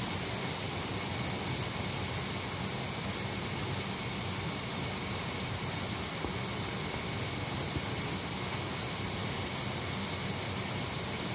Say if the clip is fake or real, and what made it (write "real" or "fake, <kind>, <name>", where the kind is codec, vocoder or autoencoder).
real